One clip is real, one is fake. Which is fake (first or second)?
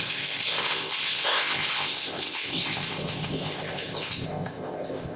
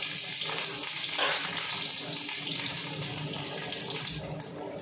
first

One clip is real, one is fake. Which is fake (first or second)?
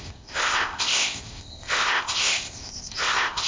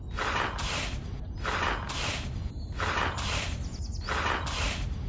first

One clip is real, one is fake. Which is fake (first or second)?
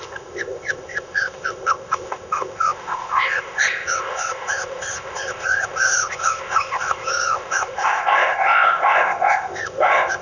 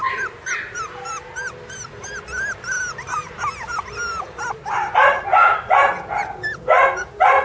first